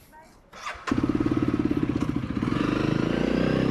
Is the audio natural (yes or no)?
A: yes